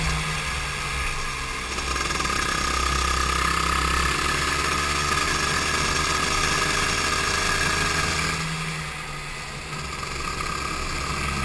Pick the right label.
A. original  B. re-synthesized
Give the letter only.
A